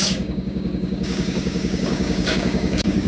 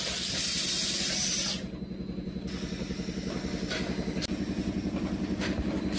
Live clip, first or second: second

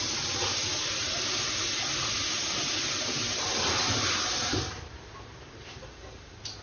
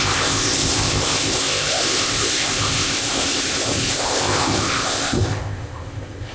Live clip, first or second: first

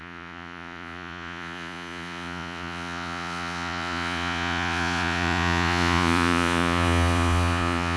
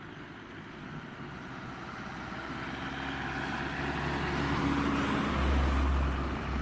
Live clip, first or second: second